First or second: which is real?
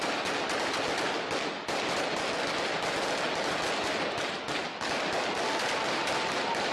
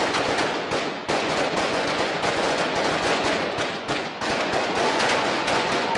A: first